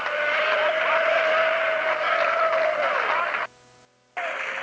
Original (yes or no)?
yes